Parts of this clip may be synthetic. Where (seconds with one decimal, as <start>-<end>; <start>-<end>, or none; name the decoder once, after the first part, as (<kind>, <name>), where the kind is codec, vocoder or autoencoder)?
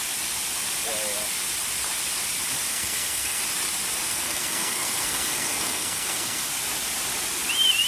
2.7-3.4 (codec, SNAC); 4.1-6.5